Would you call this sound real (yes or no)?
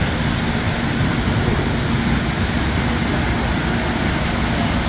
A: yes